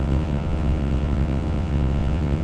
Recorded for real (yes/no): no